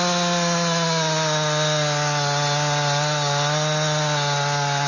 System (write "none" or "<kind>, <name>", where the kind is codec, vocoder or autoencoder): none